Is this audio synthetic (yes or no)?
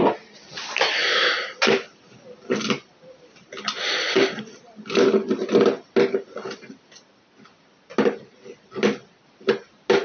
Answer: no